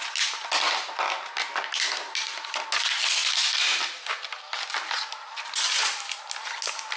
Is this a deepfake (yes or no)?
no